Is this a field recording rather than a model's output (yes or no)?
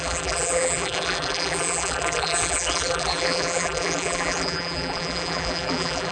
no